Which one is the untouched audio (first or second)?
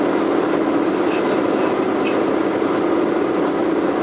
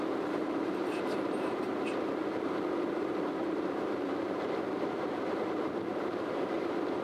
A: first